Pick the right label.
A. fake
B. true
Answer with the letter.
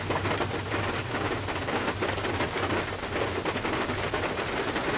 B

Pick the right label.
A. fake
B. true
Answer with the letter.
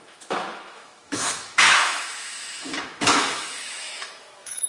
A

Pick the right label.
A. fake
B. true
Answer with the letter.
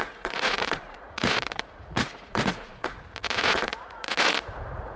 A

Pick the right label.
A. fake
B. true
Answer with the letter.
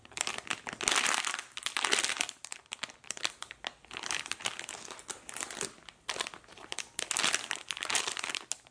B